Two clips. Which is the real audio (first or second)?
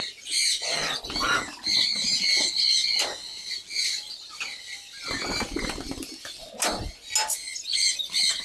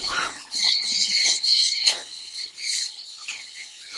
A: first